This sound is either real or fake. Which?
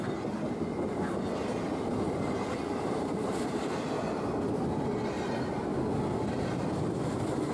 real